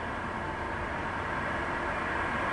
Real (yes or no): yes